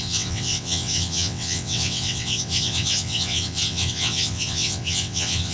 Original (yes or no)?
no